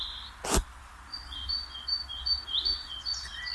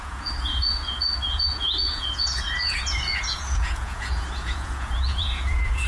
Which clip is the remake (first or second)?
second